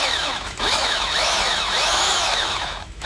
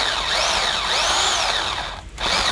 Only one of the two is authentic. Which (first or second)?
second